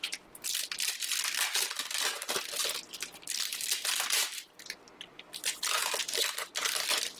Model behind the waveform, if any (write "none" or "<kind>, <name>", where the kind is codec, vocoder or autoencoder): none